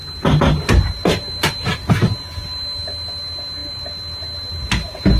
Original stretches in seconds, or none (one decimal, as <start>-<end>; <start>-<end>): 0.0-5.2